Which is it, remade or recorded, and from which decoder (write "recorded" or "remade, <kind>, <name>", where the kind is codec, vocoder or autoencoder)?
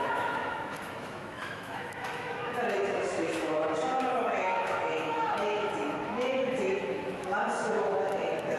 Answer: remade, autoencoder, DAC-VAE